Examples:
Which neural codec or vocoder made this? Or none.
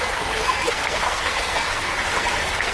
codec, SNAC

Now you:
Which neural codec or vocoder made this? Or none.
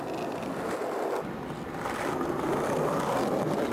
none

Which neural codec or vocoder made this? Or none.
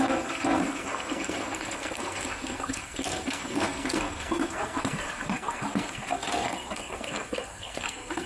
codec, SNAC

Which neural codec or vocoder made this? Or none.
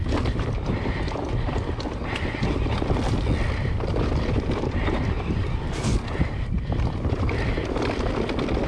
none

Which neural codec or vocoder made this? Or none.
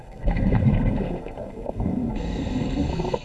codec, SNAC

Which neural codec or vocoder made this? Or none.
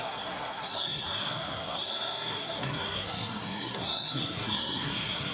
codec, SNAC